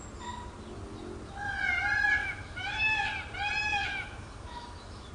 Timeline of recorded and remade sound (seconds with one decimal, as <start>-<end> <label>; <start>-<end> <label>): 0.0-2.2 recorded; 2.2-3.1 remade; 3.1-3.7 recorded; 3.7-5.1 remade